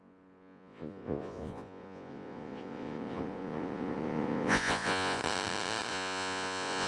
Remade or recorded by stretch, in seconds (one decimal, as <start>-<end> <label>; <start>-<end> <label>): 0.0-5.2 remade; 5.2-5.9 recorded; 5.9-6.9 remade